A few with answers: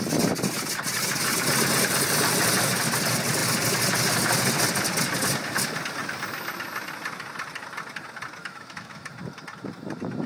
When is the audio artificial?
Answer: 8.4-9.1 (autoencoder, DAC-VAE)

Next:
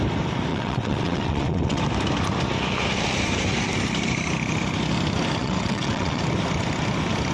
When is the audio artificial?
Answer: 0.5-1.8 (vocoder, WaveNeXt); 5.4-6.2

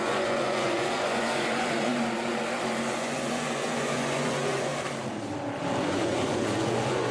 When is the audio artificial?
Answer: 0.0-1.9 (vocoder, Vocos); 2.9-4.7; 5.8-7.1

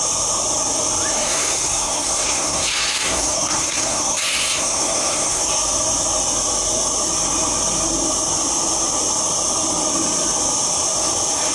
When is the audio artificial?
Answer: 1.2-5.4 (codec, SNAC)

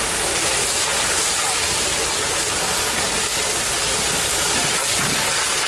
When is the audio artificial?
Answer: none

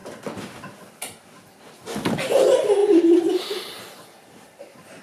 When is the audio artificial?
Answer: 2.8-5.0 (vocoder, BigVGAN v2)